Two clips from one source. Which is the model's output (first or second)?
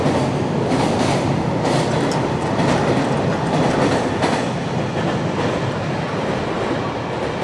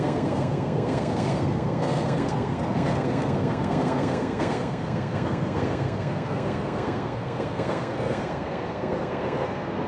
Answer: second